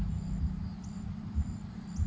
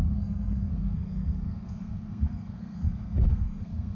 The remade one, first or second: second